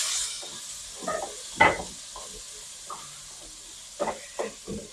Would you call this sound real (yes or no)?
yes